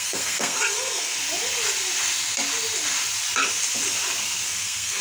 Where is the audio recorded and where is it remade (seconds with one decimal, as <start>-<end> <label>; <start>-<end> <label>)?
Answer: 0.0-1.2 remade; 1.2-4.2 recorded; 4.2-5.0 remade